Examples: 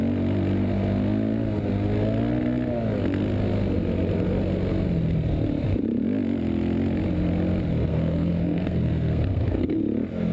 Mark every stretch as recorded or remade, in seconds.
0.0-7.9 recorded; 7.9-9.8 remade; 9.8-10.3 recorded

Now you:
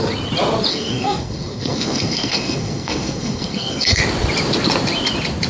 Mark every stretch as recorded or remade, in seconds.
0.0-0.7 recorded; 0.7-4.0 remade; 4.0-5.5 recorded

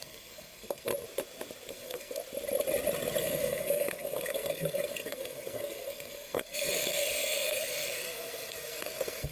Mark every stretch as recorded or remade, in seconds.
0.0-0.9 remade; 0.9-1.7 recorded; 1.7-2.2 remade; 2.2-3.2 recorded; 3.2-9.3 remade

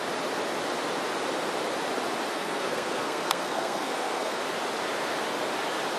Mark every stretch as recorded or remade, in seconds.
0.0-2.3 recorded; 2.3-4.4 remade; 4.4-6.0 recorded